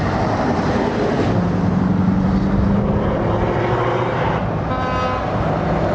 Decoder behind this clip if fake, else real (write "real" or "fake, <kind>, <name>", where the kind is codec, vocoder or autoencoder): real